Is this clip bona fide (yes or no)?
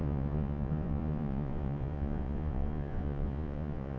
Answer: no